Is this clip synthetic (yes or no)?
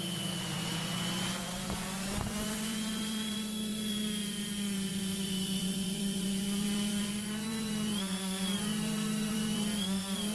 yes